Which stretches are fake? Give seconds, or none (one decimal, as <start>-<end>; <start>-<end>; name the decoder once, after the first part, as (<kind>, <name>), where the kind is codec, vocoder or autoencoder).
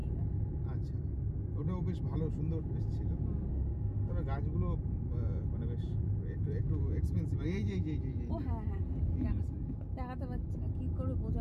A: 3.5-4.1 (codec, SNAC)